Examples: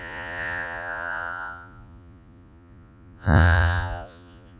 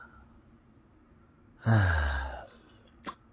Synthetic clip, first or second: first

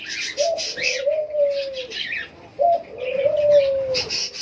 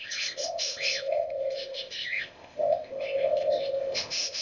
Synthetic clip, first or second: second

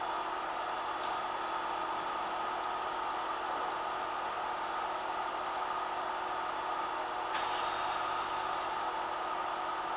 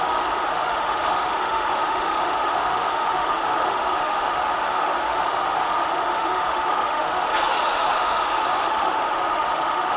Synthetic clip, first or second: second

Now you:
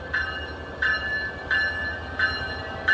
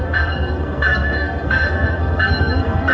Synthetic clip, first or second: second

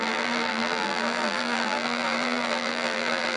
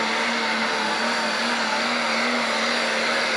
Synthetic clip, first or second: first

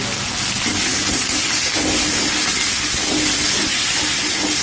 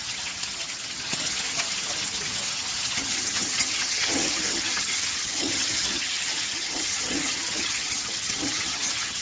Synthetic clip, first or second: second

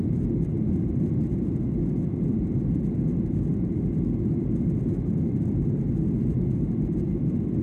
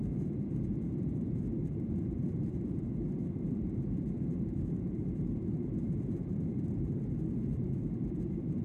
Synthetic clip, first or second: second